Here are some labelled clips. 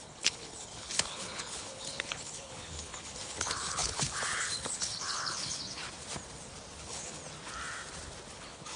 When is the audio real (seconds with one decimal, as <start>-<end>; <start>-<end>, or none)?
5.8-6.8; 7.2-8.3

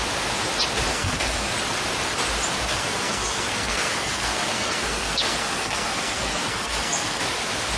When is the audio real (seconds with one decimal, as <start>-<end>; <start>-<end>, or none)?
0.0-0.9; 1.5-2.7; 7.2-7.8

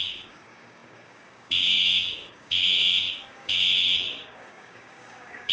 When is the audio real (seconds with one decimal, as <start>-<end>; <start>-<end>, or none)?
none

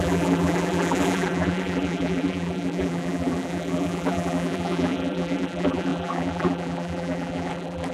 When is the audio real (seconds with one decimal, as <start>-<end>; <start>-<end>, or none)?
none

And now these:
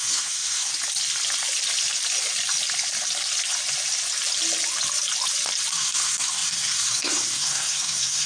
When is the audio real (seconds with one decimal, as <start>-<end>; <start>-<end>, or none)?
0.7-5.7

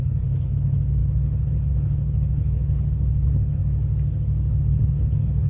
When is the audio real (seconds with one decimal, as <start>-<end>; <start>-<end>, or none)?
3.6-4.6

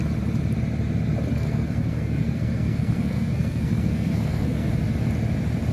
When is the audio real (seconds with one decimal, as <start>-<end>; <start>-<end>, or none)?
0.0-1.3; 4.7-5.7

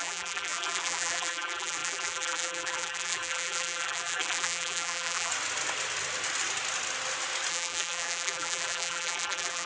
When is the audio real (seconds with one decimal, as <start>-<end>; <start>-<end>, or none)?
5.3-7.5